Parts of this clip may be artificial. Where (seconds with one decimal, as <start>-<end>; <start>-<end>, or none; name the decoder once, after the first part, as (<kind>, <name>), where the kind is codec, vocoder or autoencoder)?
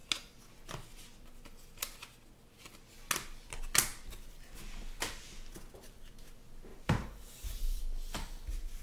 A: 6.7-7.8 (vocoder, BigVGAN v2)